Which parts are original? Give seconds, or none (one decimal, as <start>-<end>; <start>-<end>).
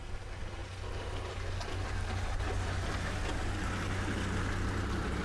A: 0.0-5.2